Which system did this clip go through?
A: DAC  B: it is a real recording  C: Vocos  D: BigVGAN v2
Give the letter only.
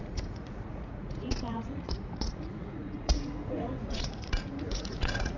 C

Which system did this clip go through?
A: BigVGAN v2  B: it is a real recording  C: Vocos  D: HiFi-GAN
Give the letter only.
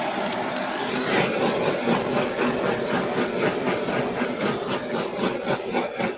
B